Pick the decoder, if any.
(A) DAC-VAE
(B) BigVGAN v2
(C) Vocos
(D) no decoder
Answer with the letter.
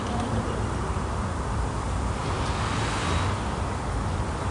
D